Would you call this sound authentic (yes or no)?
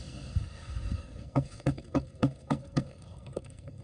no